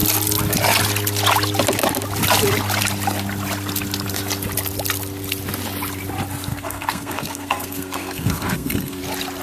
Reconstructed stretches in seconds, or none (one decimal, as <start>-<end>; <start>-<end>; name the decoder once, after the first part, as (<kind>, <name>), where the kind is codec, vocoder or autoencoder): 6.5-9.0 (codec, SNAC)